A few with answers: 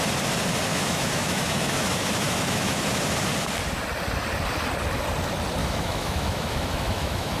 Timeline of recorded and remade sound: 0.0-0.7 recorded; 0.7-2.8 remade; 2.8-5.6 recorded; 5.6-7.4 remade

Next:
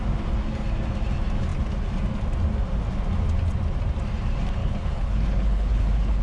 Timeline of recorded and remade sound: 0.0-4.6 recorded; 4.6-6.2 remade

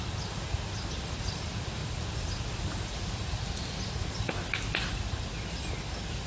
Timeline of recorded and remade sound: 0.0-6.3 recorded

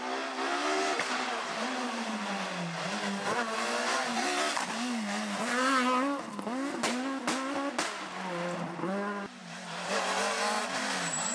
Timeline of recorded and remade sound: 0.0-11.3 recorded

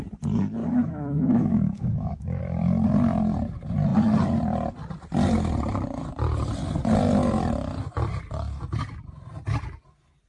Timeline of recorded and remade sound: 0.0-0.6 recorded; 0.6-2.4 remade; 2.4-10.3 recorded